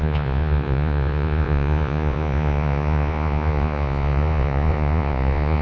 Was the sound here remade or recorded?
remade